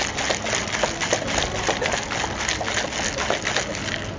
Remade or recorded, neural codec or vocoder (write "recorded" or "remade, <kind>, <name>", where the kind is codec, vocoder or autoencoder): recorded